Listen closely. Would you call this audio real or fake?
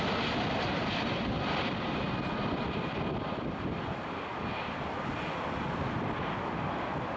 real